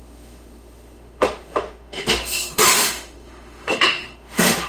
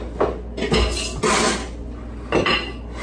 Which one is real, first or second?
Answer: second